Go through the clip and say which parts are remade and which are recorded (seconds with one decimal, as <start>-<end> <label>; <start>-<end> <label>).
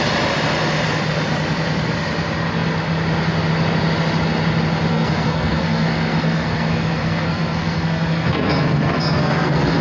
0.0-4.9 recorded; 4.9-9.8 remade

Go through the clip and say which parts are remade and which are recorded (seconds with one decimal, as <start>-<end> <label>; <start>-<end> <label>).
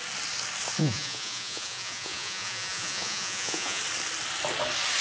0.0-0.8 recorded; 0.8-3.8 remade; 3.8-5.0 recorded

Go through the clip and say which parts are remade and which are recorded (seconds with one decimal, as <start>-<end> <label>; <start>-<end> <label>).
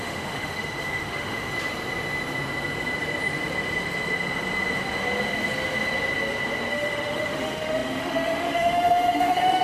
0.0-1.5 remade; 1.5-6.7 recorded; 6.7-9.6 remade